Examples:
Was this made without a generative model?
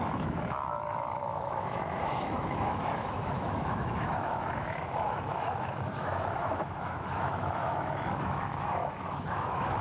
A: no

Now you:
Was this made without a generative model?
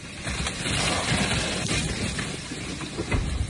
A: yes